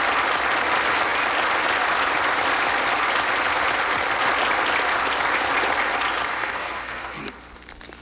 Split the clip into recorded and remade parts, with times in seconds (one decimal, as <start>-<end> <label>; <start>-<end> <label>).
0.0-6.3 recorded; 6.3-7.2 remade; 7.2-8.0 recorded